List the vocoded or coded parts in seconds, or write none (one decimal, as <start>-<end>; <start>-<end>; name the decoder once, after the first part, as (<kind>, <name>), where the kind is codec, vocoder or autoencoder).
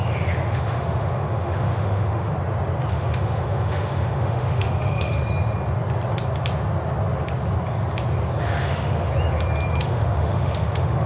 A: 0.0-2.3 (autoencoder, DAC-VAE); 2.9-5.2; 8.4-9.1; 9.8-11.1